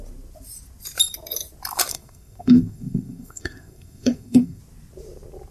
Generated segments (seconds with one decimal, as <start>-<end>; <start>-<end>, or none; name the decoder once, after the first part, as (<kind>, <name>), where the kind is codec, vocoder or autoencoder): 1.9-4.6 (codec, SNAC)